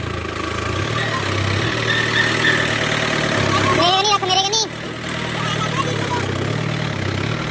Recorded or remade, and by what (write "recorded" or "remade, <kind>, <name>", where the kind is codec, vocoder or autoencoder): recorded